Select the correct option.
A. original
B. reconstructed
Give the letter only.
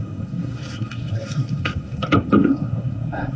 B